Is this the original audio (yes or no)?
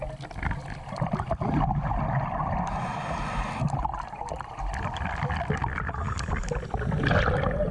yes